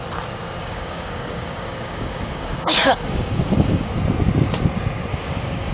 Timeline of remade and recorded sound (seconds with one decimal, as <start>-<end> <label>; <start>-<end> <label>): 0.0-0.6 recorded; 0.6-3.9 remade; 3.9-5.1 recorded; 5.1-5.7 remade